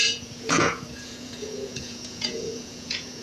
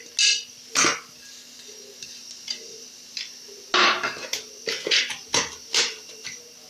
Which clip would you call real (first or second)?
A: second